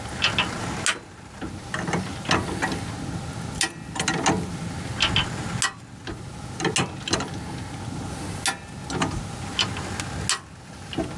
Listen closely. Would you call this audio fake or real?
real